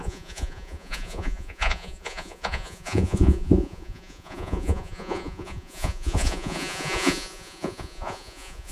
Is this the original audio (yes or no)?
no